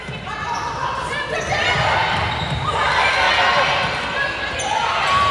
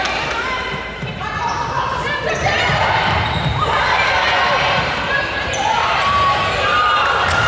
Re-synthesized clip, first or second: second